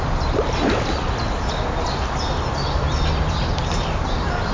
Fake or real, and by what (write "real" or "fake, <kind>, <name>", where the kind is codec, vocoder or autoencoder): real